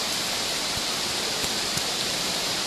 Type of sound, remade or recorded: remade